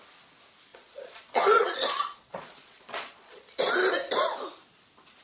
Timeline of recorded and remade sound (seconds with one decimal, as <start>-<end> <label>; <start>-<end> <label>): 0.0-0.7 recorded; 0.7-3.7 remade; 3.7-5.2 recorded